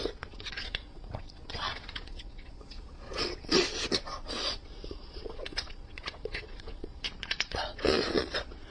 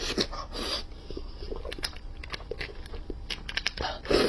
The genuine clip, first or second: second